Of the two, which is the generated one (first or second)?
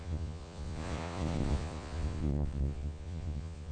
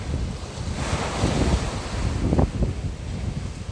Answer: first